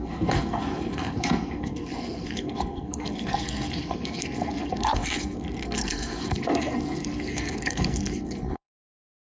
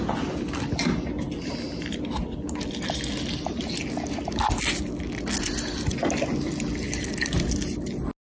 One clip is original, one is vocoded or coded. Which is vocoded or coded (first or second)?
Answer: first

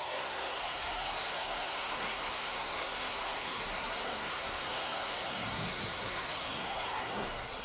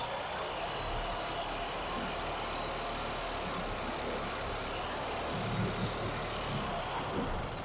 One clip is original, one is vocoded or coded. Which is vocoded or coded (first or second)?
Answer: first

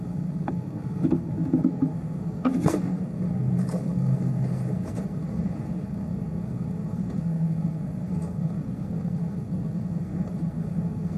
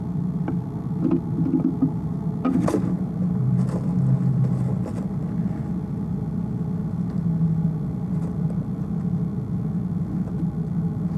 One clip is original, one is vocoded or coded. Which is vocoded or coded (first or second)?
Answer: first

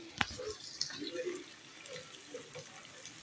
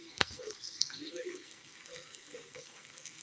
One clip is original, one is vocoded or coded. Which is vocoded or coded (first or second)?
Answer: second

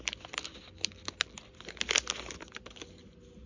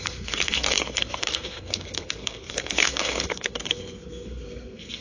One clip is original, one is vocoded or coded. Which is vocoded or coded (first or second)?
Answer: second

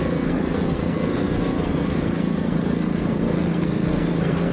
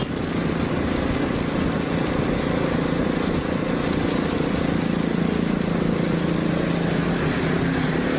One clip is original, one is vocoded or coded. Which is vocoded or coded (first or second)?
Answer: first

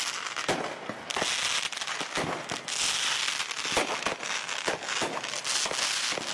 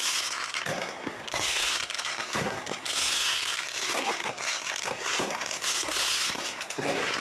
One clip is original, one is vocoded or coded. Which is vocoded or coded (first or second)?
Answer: second